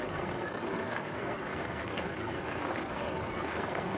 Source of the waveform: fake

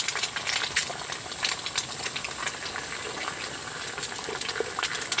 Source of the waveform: real